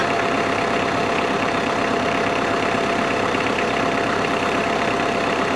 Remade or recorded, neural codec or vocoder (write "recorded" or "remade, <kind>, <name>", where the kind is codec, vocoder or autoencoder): remade, vocoder, BigVGAN v2